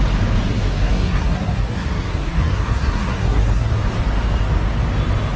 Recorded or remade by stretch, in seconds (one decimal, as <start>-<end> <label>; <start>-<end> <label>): 0.0-0.5 recorded; 0.5-3.7 remade; 3.7-5.4 recorded